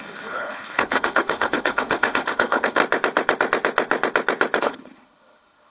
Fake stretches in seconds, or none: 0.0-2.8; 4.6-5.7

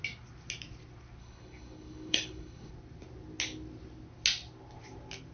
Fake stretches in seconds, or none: 1.2-2.7

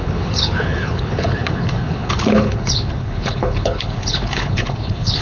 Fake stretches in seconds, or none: 0.0-5.2

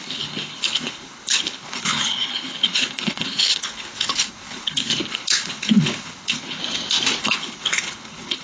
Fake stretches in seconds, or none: 0.0-6.6; 7.2-8.4